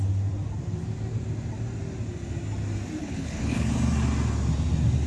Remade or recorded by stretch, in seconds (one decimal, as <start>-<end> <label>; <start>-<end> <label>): 0.0-3.0 recorded; 3.0-3.7 remade; 3.7-5.1 recorded